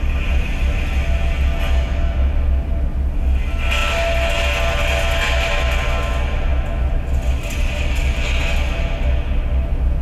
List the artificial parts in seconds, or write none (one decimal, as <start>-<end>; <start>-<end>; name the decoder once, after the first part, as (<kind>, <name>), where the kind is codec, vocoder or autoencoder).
none